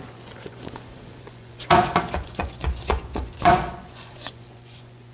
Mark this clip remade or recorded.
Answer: remade